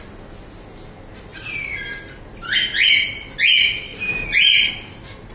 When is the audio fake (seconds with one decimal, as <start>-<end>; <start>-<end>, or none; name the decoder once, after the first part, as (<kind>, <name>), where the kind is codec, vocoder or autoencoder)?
1.3-1.8 (vocoder, BigVGAN v2); 3.9-4.7